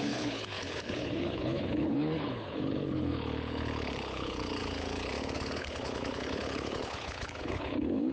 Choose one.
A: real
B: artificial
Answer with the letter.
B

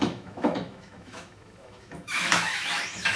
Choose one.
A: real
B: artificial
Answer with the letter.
B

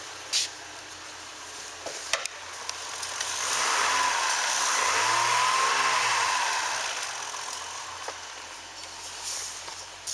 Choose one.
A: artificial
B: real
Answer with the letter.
B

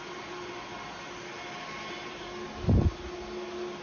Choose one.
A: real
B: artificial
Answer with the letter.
A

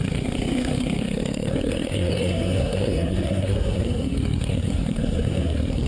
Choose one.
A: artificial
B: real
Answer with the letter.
A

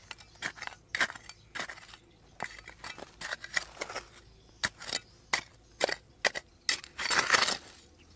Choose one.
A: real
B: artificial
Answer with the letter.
A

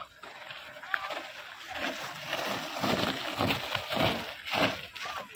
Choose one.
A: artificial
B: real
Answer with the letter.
B